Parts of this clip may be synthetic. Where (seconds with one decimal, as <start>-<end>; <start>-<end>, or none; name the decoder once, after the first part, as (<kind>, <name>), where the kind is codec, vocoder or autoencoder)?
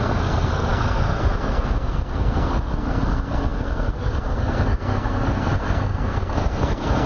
0.0-7.1 (codec, SNAC)